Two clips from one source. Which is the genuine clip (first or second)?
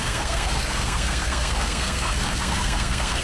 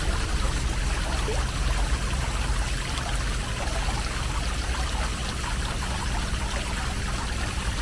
second